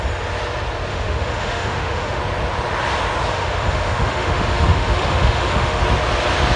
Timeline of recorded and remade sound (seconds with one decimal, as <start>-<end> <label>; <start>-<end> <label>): 0.0-0.9 recorded; 0.9-2.2 remade; 2.2-3.3 recorded; 3.3-5.8 remade; 5.8-6.6 recorded